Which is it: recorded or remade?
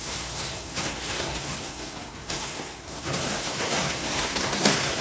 remade